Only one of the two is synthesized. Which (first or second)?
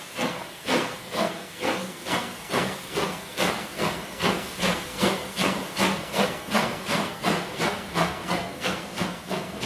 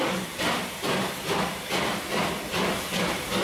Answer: first